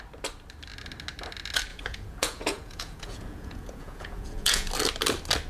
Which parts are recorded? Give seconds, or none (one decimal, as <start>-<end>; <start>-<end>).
0.0-1.7; 4.7-5.5